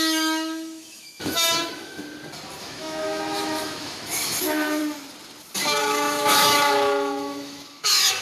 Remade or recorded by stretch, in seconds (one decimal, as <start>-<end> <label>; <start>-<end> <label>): 0.0-2.0 remade; 2.0-2.6 recorded; 2.6-4.8 remade; 4.8-5.8 recorded; 5.8-8.2 remade